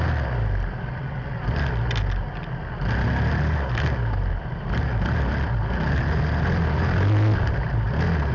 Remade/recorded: recorded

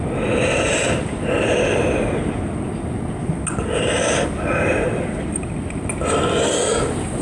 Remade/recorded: recorded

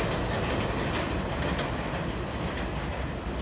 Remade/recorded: recorded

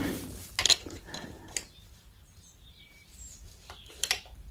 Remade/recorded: remade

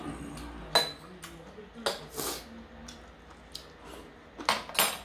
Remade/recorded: recorded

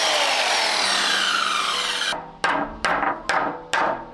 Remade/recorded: recorded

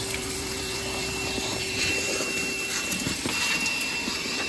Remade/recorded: remade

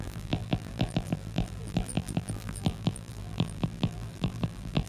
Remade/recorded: remade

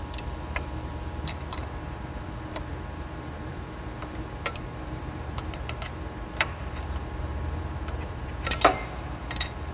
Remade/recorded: remade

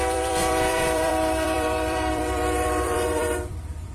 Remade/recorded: remade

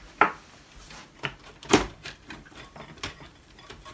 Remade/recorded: remade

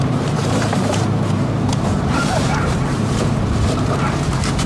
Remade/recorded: remade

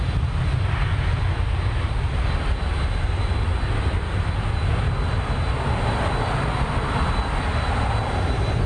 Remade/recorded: recorded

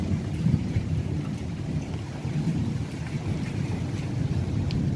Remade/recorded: remade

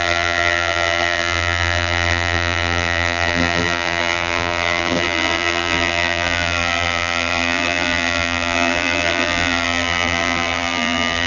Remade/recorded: remade